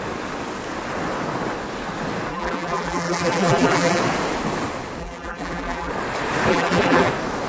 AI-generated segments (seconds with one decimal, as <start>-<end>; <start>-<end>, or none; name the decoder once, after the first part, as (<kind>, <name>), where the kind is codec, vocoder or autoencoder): 2.3-4.0 (vocoder, BigVGAN v2); 5.0-5.9; 6.5-7.1